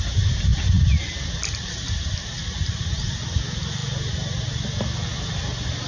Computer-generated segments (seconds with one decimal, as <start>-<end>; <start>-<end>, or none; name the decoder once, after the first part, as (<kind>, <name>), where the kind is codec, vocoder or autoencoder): none